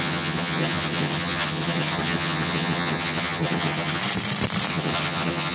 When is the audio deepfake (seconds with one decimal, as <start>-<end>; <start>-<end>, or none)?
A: 0.0-4.0; 4.7-5.5